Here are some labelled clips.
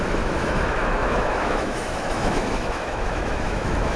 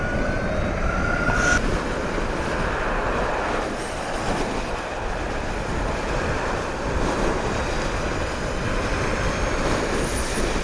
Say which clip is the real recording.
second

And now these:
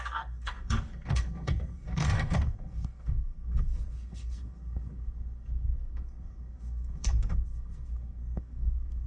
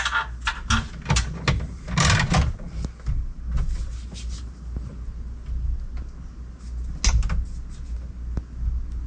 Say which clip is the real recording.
second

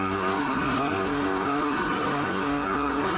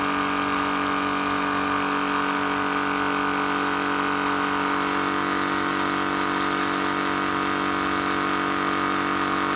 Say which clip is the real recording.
second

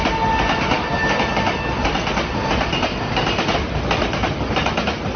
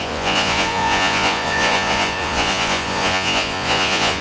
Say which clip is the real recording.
first